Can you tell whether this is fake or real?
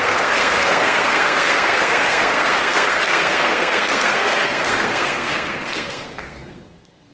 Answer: fake